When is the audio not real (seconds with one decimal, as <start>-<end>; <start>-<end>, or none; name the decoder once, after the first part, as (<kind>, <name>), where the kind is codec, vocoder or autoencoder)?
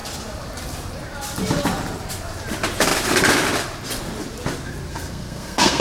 4.9-5.8 (codec, SNAC)